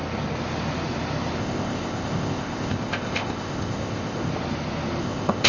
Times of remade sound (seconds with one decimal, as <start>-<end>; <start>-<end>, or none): 1.4-4.3; 5.0-5.5